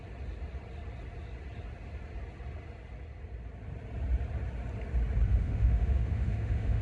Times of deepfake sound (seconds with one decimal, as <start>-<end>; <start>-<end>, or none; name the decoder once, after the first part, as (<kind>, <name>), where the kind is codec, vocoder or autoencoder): 5.3-6.8 (autoencoder, DAC-VAE)